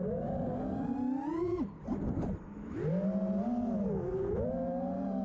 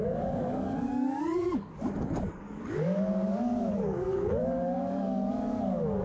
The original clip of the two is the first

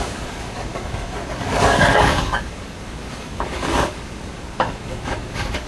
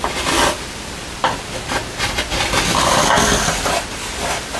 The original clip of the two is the second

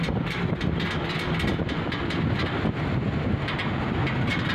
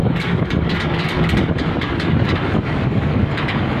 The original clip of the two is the first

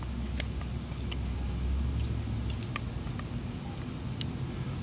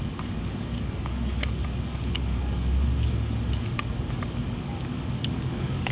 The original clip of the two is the first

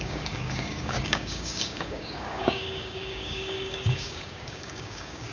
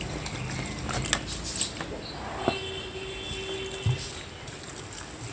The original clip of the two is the second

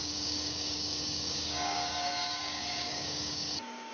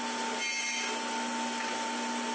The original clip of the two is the second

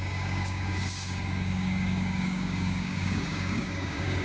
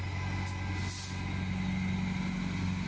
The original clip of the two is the second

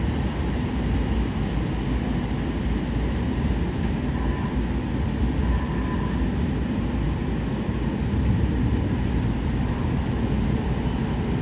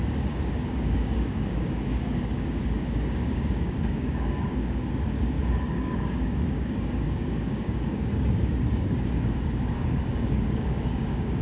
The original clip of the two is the first